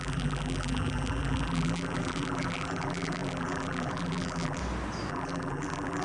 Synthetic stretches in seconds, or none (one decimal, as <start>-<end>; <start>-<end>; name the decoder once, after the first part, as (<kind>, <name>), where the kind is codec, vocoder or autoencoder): 0.0-4.6 (vocoder, BigVGAN v2); 5.1-6.0